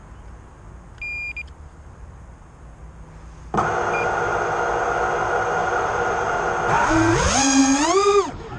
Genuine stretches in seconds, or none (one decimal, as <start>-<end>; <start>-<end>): 0.0-5.6; 6.5-8.6